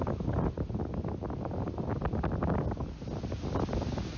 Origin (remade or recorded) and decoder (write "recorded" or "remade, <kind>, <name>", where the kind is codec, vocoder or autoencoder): recorded